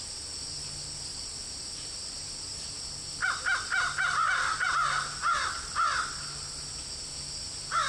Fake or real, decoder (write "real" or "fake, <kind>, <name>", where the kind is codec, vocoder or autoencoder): real